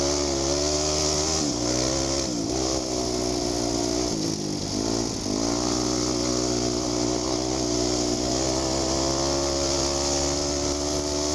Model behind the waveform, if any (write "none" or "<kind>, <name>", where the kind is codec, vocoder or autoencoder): none